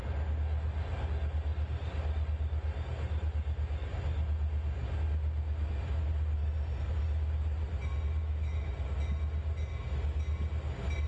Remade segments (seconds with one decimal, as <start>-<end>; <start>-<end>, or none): 8.2-8.7